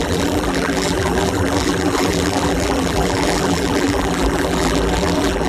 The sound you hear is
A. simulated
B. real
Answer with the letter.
A